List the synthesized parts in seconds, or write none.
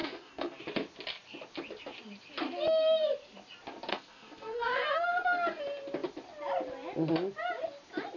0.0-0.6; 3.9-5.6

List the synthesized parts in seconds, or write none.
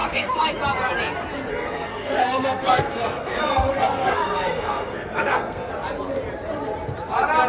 0.0-0.5; 1.5-5.7